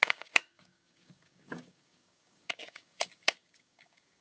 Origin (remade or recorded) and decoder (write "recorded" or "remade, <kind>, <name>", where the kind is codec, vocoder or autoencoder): remade, codec, DAC